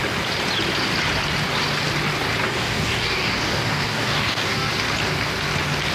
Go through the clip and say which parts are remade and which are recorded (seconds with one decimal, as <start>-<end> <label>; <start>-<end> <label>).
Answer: 0.0-2.4 recorded; 2.4-4.7 remade; 4.7-5.9 recorded